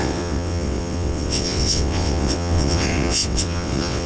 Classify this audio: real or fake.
fake